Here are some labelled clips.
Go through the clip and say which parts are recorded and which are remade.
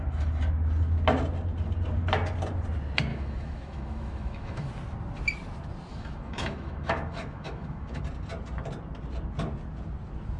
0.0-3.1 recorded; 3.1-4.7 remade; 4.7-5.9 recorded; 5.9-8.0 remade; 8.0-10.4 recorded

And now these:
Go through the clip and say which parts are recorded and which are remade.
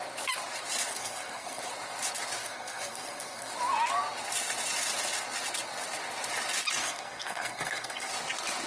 0.0-0.9 recorded; 0.9-1.6 remade; 1.6-2.4 recorded; 2.4-3.5 remade; 3.5-6.8 recorded; 6.8-8.1 remade; 8.1-8.7 recorded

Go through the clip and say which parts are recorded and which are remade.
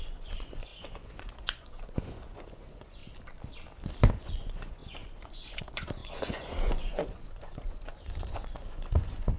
0.0-3.0 remade; 3.0-4.1 recorded; 4.1-9.4 remade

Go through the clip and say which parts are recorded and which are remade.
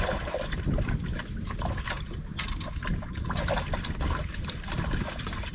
0.0-2.3 remade; 2.3-3.1 recorded; 3.1-5.5 remade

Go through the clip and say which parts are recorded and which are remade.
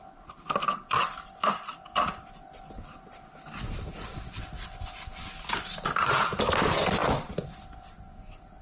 0.0-8.6 recorded